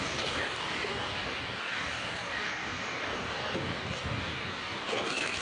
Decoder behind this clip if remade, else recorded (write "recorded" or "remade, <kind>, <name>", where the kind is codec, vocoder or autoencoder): remade, codec, DAC